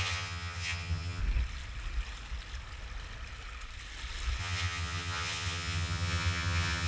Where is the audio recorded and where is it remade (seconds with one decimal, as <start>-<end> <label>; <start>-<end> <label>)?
0.0-1.2 remade; 1.2-4.4 recorded; 4.4-6.9 remade